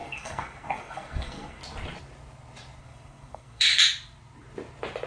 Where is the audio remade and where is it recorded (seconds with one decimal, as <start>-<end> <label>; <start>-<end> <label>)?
0.0-1.6 remade; 1.6-2.8 recorded; 2.8-3.7 remade; 3.7-5.1 recorded